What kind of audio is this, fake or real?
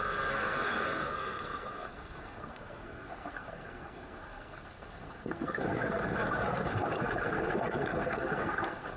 fake